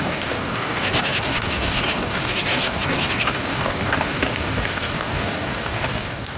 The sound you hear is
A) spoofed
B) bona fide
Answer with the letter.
A